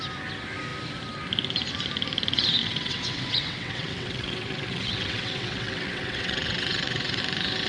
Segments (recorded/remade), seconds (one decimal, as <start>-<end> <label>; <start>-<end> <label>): 0.0-2.6 recorded; 2.6-7.2 remade; 7.2-7.7 recorded